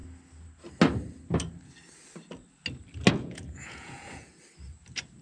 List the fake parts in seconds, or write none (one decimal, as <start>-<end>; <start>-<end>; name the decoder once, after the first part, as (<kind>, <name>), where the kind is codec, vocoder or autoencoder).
3.1-4.3 (vocoder, Vocos)